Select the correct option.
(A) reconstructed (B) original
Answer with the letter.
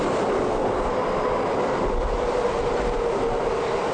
B